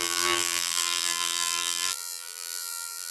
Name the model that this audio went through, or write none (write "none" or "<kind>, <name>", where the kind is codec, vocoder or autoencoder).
vocoder, BigVGAN v2